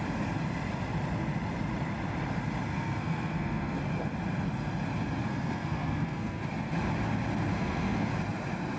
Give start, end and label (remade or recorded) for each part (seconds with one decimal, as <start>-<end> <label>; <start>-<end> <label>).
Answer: 0.0-2.7 recorded; 2.7-3.8 remade; 3.8-5.2 recorded; 5.2-6.4 remade; 6.4-7.5 recorded; 7.5-8.1 remade; 8.1-8.8 recorded